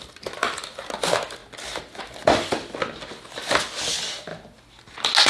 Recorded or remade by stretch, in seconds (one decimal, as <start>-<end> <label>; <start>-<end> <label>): 0.0-5.3 recorded